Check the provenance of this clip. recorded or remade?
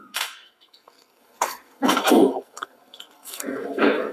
remade